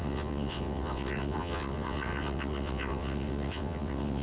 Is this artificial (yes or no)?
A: yes